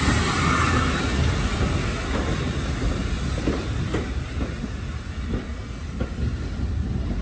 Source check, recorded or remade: recorded